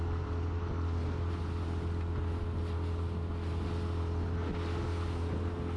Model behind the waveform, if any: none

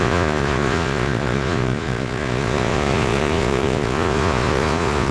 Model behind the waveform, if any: vocoder, Vocos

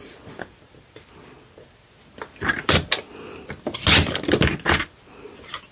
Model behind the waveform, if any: none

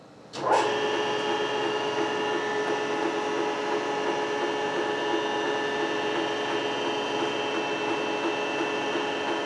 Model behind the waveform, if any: none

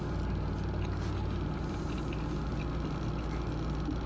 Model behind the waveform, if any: none